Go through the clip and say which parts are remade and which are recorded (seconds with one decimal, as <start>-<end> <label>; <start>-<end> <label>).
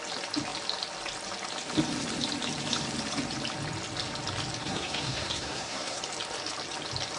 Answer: 0.0-4.6 recorded; 4.6-6.0 remade; 6.0-7.2 recorded